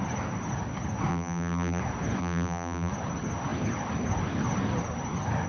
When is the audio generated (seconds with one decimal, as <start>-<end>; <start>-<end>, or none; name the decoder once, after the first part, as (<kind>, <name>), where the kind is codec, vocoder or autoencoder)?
1.1-1.8 (vocoder, BigVGAN v2); 2.2-2.9